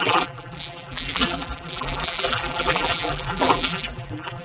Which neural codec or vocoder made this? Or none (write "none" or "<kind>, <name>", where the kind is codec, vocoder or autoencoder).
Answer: vocoder, BigVGAN v2